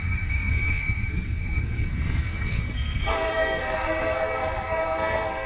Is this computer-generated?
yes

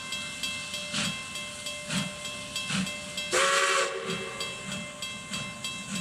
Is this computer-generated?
no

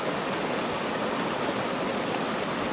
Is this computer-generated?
no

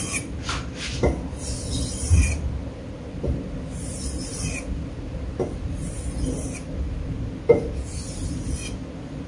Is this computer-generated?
no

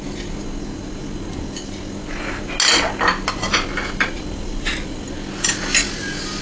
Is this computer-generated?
no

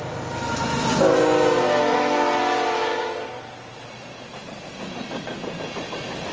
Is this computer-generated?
no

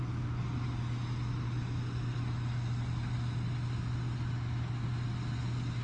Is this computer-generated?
no